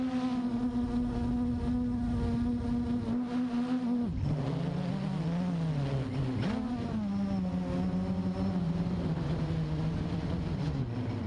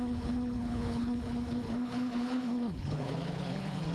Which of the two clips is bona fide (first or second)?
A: first